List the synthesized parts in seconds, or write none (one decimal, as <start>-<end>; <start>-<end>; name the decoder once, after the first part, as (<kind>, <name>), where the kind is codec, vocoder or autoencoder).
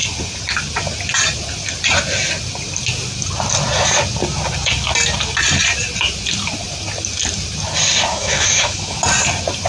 8.1-9.0 (autoencoder, DAC-VAE)